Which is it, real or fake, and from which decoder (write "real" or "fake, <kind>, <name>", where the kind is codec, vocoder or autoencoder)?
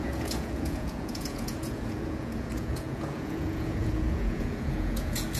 fake, vocoder, Vocos